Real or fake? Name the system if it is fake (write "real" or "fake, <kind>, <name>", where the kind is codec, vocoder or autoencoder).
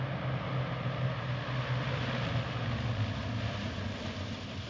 real